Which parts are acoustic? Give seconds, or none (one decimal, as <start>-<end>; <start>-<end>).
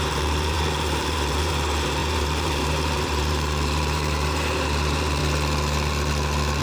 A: 5.2-6.6